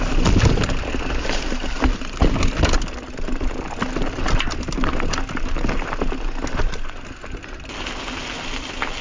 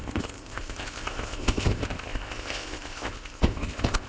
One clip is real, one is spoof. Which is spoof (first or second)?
second